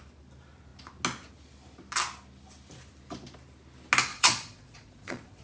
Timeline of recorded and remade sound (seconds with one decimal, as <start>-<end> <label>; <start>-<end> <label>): 0.0-4.1 recorded; 4.1-5.4 remade